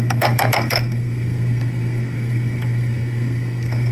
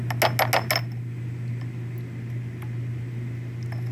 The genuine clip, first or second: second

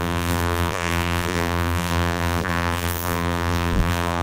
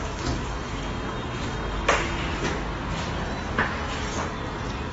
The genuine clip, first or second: second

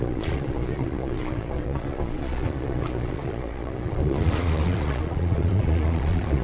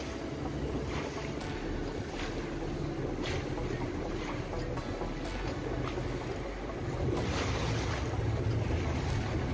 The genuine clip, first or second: second